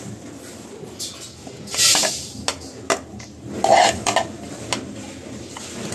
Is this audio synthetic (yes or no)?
no